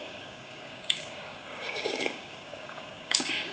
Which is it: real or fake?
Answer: fake